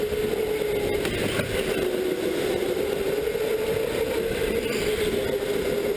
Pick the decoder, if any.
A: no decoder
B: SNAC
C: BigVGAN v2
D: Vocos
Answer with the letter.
A